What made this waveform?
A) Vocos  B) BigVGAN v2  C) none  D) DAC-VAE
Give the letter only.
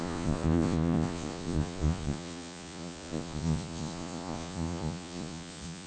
A